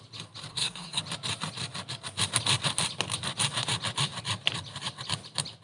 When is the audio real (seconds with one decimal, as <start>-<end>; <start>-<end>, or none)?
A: 0.0-0.5; 1.0-5.6